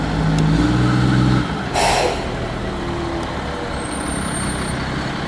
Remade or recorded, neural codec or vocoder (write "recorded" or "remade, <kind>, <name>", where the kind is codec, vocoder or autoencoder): recorded